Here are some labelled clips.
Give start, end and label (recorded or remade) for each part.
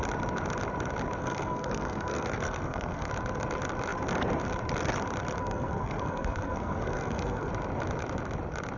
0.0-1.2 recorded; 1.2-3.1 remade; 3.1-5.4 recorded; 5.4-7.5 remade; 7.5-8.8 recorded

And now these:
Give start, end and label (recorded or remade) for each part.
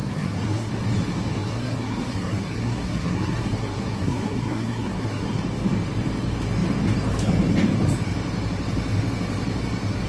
0.0-0.7 remade; 0.7-1.3 recorded; 1.3-5.4 remade; 5.4-10.1 recorded